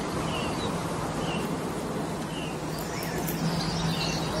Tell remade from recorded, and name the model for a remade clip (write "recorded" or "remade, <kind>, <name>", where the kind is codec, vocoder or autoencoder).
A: recorded